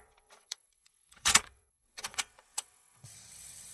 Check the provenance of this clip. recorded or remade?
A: remade